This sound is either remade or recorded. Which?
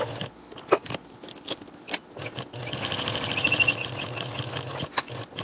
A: recorded